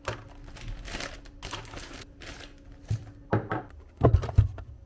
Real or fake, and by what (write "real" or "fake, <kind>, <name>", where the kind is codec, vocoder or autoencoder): real